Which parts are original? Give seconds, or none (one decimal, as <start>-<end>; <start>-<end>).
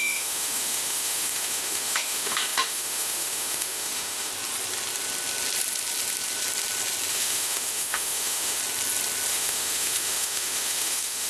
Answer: 4.3-7.1; 8.6-9.3